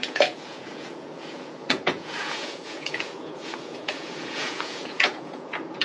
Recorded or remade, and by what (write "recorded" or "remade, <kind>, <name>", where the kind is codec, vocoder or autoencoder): remade, vocoder, Vocos